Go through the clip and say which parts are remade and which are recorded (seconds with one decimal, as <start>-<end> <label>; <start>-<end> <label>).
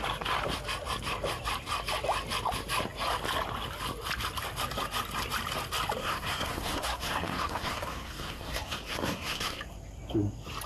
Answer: 0.0-6.0 recorded; 6.0-9.6 remade; 9.6-10.7 recorded